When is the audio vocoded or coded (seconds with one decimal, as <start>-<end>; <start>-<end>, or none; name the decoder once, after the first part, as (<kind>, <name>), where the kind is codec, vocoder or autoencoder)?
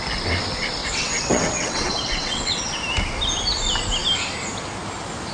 0.8-2.7 (vocoder, WaveNeXt)